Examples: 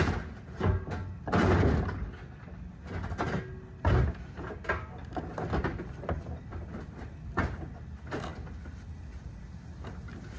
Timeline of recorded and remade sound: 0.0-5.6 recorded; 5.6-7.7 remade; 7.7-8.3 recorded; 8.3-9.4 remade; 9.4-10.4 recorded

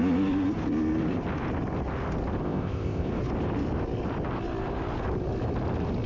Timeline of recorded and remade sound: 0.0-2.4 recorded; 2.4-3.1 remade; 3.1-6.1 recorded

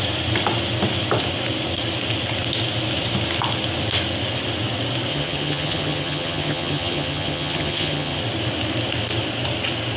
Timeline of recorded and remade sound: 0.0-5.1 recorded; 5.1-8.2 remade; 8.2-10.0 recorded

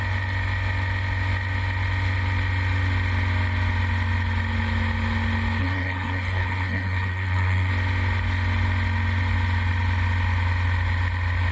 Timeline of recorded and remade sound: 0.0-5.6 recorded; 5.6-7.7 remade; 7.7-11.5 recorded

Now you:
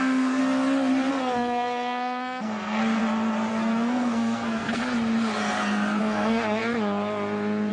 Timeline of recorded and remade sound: 0.0-0.4 remade; 0.4-1.1 recorded; 1.1-3.0 remade; 3.0-3.5 recorded; 3.5-4.8 remade; 4.8-6.0 recorded; 6.0-6.6 remade; 6.6-7.7 recorded

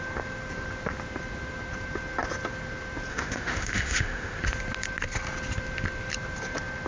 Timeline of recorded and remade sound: 0.0-3.1 recorded; 3.1-4.4 remade; 4.4-6.9 recorded